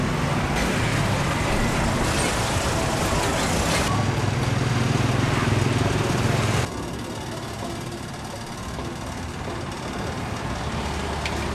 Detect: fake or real real